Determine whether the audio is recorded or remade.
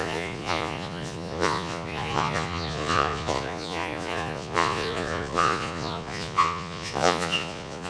remade